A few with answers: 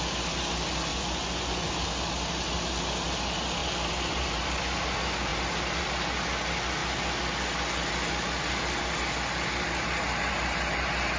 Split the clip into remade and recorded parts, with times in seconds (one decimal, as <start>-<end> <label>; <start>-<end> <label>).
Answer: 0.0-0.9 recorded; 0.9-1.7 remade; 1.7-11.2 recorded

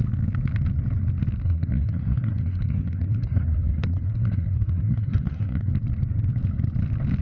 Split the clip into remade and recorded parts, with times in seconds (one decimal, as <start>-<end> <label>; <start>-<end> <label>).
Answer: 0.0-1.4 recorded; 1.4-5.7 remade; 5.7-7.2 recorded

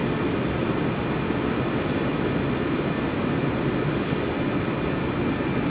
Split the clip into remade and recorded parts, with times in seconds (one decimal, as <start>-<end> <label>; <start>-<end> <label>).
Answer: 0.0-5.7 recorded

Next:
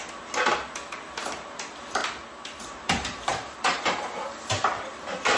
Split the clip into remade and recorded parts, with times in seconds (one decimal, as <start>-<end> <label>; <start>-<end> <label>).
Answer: 0.0-5.4 recorded